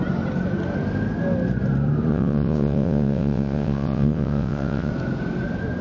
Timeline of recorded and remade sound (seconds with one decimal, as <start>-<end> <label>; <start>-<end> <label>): 0.0-2.1 recorded; 2.1-4.9 remade; 4.9-5.8 recorded